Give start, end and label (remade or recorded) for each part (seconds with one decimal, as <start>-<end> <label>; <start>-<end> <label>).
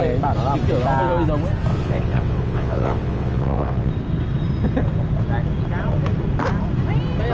0.0-1.7 recorded; 1.7-3.9 remade; 3.9-7.3 recorded